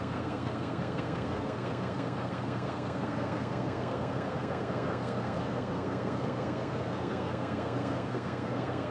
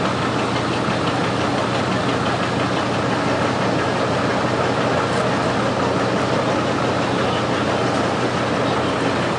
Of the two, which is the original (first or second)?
second